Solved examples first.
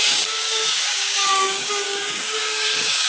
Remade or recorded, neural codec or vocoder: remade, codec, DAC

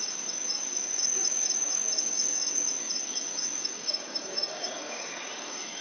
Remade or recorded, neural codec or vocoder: remade, codec, DAC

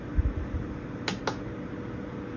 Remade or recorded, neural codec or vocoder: recorded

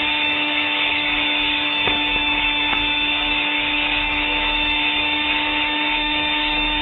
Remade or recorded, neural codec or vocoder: remade, codec, DAC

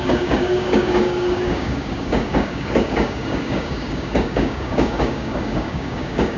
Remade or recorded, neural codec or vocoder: remade, codec, DAC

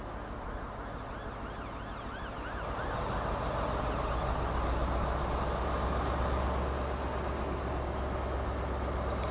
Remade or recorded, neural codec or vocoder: recorded